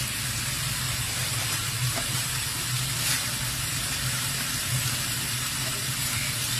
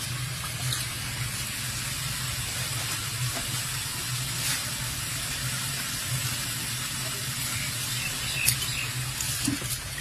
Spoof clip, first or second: first